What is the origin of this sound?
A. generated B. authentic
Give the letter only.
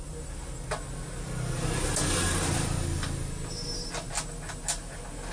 B